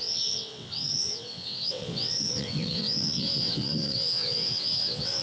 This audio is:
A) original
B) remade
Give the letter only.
B